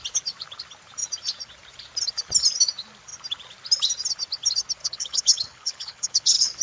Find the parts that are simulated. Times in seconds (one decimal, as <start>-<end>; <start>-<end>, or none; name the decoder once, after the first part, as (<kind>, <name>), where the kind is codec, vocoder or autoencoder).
4.8-6.6 (codec, HILCodec)